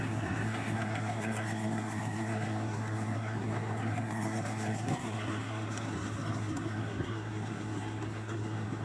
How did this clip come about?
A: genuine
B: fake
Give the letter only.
B